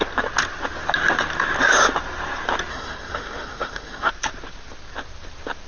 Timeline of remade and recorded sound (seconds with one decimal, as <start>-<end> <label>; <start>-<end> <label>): 0.0-2.7 recorded; 2.7-4.1 remade; 4.1-5.7 recorded